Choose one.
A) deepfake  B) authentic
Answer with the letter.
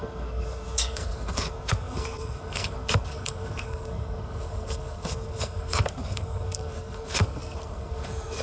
A